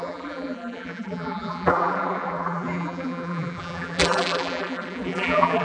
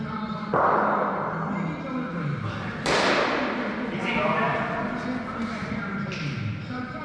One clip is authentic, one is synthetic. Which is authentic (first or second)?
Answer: second